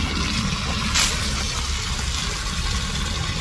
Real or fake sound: real